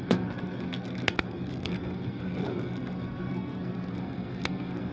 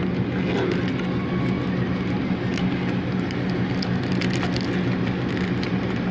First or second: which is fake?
first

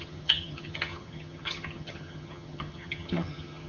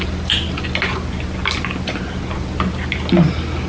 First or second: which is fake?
first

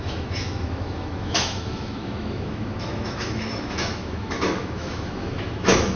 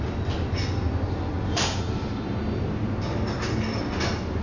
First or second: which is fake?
first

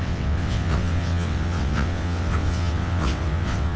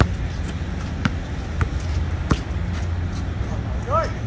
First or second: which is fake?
first